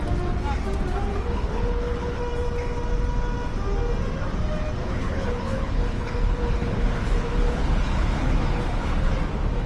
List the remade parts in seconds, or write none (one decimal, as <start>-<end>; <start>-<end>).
1.1-2.2; 4.8-9.1